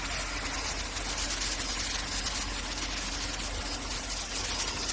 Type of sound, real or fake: real